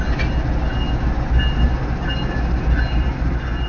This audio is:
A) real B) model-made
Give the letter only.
A